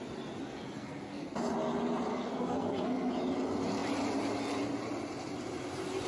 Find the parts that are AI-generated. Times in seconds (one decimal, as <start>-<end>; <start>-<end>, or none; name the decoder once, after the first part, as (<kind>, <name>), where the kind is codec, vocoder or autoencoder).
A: 0.4-1.3 (codec, SNAC); 2.1-3.1